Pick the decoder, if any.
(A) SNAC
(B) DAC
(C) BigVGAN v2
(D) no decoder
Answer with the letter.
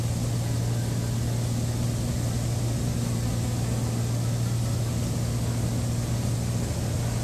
D